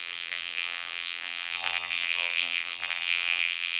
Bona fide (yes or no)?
no